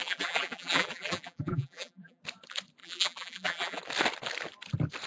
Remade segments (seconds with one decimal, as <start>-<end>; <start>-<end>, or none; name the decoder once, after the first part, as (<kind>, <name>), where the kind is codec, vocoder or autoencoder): 0.0-2.2 (vocoder, BigVGAN v2); 2.8-3.8